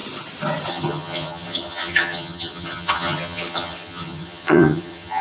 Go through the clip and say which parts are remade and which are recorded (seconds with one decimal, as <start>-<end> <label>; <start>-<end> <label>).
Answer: 0.0-0.7 recorded; 0.7-5.2 remade

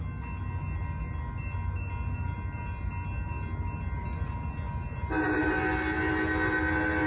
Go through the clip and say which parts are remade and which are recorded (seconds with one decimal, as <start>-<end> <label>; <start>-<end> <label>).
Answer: 0.0-7.1 recorded

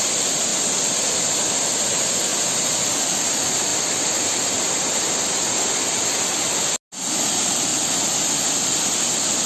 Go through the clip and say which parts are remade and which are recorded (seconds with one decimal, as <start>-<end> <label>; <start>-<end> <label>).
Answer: 0.0-9.5 recorded